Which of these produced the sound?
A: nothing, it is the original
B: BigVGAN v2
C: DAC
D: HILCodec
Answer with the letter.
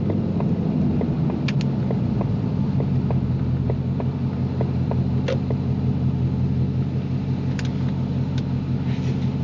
A